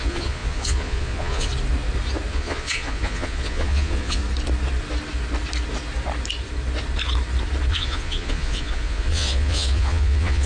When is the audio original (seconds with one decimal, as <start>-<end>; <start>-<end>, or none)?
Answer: 1.5-2.3; 4.2-7.7